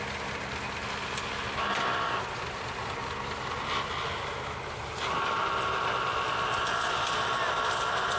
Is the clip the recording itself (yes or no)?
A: yes